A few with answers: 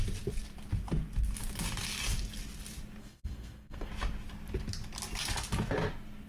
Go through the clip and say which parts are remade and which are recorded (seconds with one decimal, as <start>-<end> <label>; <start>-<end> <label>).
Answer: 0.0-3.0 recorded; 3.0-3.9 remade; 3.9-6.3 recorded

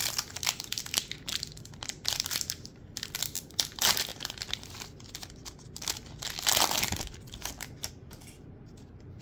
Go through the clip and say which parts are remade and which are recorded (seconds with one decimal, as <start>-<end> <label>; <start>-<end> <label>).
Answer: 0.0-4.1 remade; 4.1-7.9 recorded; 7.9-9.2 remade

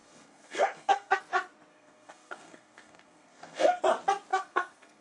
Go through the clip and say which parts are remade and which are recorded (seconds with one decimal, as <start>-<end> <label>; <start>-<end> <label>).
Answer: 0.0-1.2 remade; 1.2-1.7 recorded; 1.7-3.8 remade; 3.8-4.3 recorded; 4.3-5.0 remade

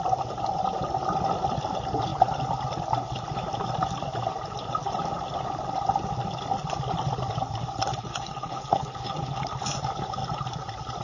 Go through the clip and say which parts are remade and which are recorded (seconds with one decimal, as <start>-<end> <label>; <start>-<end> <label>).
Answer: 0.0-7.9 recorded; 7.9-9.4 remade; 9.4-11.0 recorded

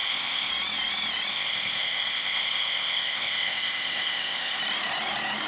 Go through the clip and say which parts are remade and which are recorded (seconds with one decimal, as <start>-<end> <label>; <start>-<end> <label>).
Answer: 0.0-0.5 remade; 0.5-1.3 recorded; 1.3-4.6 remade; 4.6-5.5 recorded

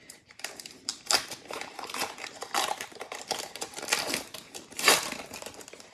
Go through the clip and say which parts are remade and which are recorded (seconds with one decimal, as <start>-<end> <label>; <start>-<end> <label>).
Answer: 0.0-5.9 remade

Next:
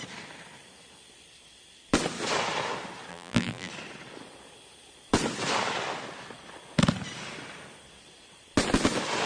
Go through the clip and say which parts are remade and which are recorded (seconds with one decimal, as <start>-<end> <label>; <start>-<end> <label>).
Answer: 0.0-3.1 recorded; 3.1-3.7 remade; 3.7-9.3 recorded

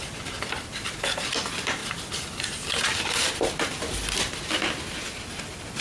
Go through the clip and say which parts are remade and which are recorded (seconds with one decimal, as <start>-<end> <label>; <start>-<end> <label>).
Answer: 0.0-5.8 recorded